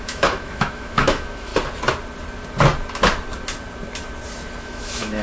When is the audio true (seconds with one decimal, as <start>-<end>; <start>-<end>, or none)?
1.5-4.6